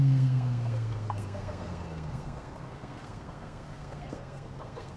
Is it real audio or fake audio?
fake